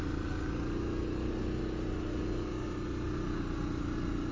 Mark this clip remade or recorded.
recorded